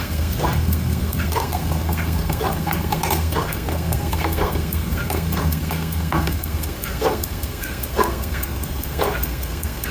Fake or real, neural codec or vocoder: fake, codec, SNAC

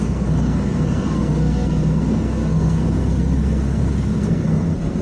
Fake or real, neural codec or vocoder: fake, codec, SNAC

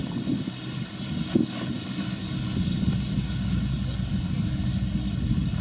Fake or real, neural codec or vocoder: real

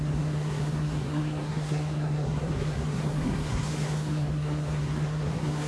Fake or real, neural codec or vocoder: fake, codec, SNAC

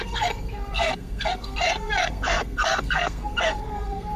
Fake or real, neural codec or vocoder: fake, codec, SNAC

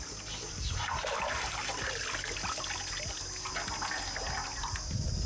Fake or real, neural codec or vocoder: real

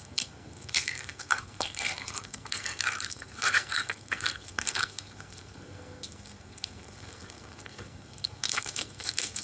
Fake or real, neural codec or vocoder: fake, codec, SNAC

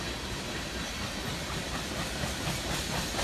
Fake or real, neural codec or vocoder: real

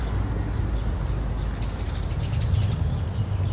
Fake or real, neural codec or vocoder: real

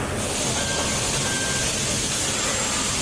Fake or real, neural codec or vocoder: real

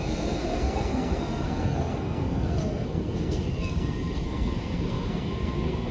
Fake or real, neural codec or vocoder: fake, codec, SNAC